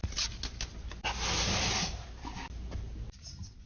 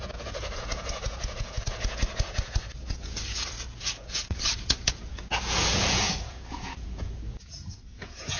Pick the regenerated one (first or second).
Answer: second